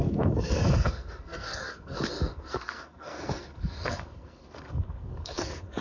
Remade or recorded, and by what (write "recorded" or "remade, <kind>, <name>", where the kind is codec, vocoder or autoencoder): remade, codec, SNAC